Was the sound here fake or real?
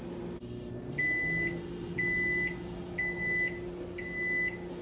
real